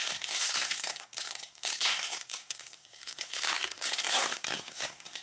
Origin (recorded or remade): remade